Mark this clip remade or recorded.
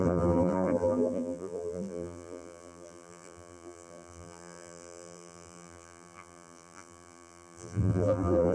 remade